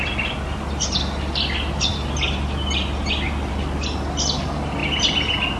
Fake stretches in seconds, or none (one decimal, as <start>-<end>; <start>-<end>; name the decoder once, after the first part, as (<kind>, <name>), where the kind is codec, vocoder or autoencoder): none